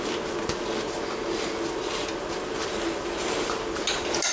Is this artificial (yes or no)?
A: no